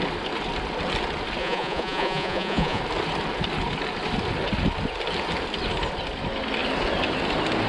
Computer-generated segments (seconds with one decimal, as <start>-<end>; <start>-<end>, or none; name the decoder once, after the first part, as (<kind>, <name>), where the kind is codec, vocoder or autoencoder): 1.4-2.8 (vocoder, Vocos)